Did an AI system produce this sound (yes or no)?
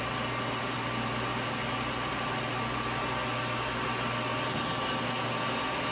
no